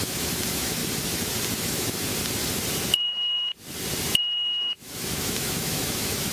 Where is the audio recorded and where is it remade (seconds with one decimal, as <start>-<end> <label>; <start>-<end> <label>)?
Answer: 0.0-0.8 remade; 0.8-1.6 recorded; 1.6-2.1 remade; 2.1-2.8 recorded; 2.8-3.5 remade; 3.5-4.2 recorded; 4.2-6.3 remade